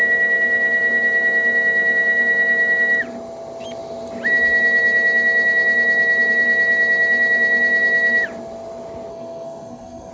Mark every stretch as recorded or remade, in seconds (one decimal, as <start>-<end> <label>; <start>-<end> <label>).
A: 0.0-9.1 recorded; 9.1-10.1 remade